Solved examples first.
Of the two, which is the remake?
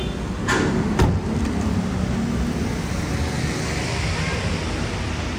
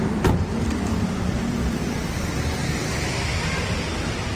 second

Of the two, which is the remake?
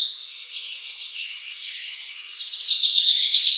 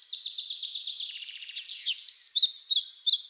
first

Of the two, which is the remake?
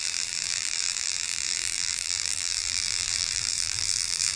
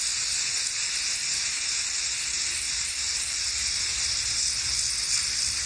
first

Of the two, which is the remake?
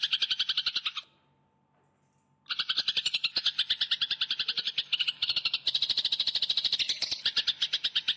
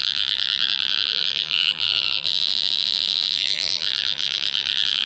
second